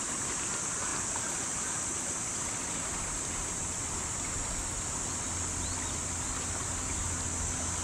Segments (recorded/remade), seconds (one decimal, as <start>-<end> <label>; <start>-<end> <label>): 0.0-7.8 recorded

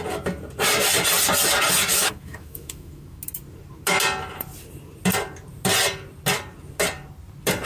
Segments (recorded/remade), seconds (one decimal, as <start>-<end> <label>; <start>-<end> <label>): 0.0-1.9 recorded; 1.9-3.2 remade; 3.2-7.7 recorded

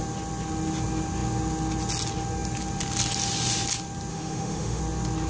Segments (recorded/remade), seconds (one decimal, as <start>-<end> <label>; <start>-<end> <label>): 0.0-4.1 recorded; 4.1-4.8 remade; 4.8-5.3 recorded

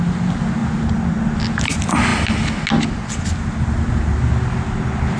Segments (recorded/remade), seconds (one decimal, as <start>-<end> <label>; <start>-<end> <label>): 0.0-5.2 recorded

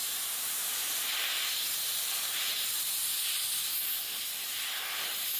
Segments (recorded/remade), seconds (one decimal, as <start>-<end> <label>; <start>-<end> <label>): 0.0-5.4 recorded